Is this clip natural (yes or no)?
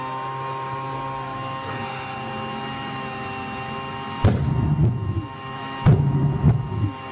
yes